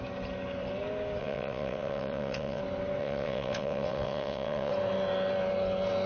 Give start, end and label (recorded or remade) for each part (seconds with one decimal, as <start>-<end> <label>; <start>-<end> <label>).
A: 0.0-1.2 recorded; 1.2-2.6 remade; 2.6-3.0 recorded; 3.0-4.7 remade; 4.7-6.1 recorded